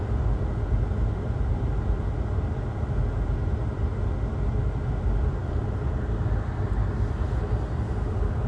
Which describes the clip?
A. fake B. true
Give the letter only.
B